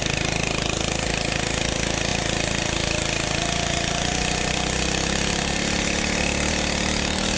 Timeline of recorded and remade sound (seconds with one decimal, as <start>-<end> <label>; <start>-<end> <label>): 0.0-7.4 recorded